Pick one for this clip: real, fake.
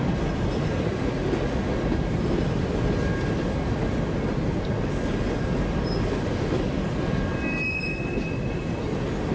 real